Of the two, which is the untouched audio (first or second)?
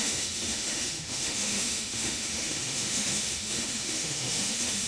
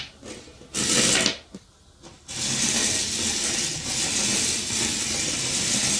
second